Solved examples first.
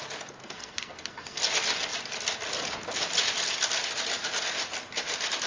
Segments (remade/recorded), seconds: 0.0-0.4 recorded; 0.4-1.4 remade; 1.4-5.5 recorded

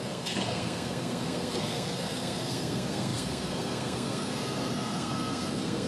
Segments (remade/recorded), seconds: 0.0-5.9 remade

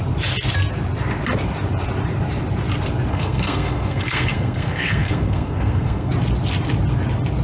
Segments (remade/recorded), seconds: 0.0-3.1 recorded; 3.1-6.1 remade; 6.1-7.4 recorded

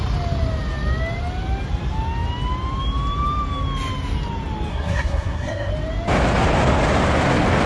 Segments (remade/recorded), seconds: 0.0-4.7 recorded; 4.7-5.7 remade; 5.7-7.7 recorded

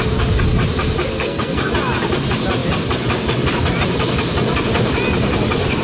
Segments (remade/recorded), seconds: 0.0-1.1 recorded; 1.1-1.7 remade; 1.7-5.8 recorded

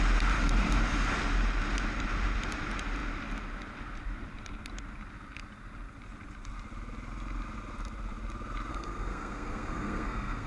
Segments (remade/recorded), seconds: 0.0-8.7 recorded; 8.7-10.5 remade

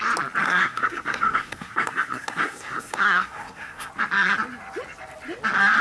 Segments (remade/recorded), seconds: 0.0-0.4 recorded; 0.4-3.9 remade; 3.9-5.8 recorded

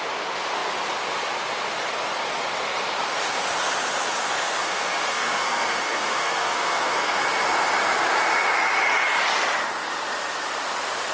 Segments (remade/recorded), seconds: 0.0-4.2 recorded; 4.2-7.2 remade; 7.2-11.1 recorded